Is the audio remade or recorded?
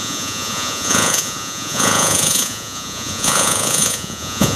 remade